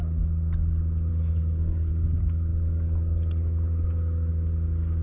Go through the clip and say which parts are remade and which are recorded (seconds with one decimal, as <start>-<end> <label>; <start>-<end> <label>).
0.0-1.1 recorded; 1.1-1.9 remade; 1.9-5.0 recorded